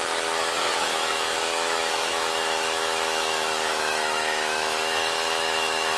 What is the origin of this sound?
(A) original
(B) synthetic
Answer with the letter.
B